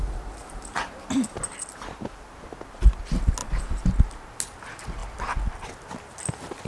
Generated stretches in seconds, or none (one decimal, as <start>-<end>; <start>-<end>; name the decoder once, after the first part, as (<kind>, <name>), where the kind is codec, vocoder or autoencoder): 0.4-1.4 (vocoder, BigVGAN v2); 3.4-3.9